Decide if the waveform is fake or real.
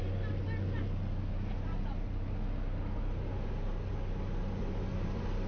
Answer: real